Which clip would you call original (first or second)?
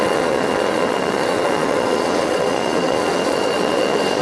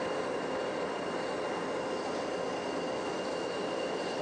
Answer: second